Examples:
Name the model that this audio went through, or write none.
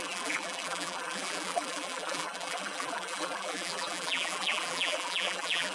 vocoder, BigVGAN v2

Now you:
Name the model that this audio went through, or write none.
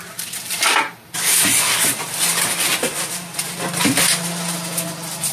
none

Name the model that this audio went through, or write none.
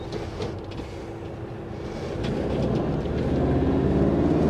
none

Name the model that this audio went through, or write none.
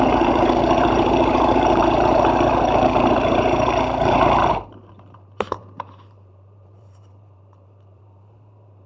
vocoder, BigVGAN v2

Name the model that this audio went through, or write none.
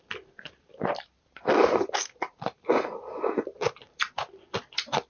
vocoder, BigVGAN v2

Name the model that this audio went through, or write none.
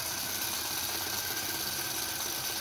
none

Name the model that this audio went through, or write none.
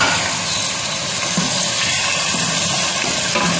none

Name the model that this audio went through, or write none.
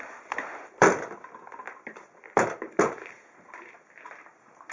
vocoder, BigVGAN v2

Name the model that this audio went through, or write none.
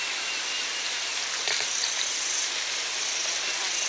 none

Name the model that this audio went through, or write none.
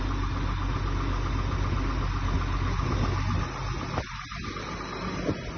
none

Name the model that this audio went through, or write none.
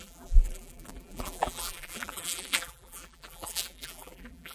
vocoder, BigVGAN v2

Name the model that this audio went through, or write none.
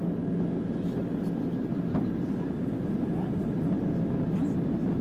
none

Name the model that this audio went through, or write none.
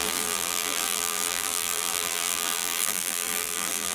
vocoder, BigVGAN v2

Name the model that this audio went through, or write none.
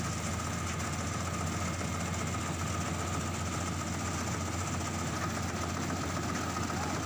none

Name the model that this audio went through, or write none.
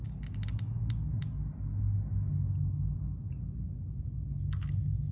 none